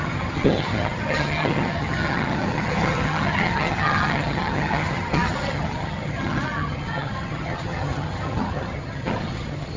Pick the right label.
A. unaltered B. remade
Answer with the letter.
B